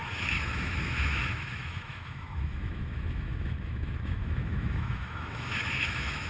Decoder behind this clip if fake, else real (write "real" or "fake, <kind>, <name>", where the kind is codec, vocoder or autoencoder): fake, autoencoder, DAC-VAE